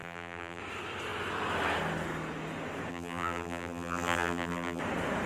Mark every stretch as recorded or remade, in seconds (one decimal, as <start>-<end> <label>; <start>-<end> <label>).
0.0-0.6 remade; 0.6-2.9 recorded; 2.9-4.8 remade; 4.8-5.3 recorded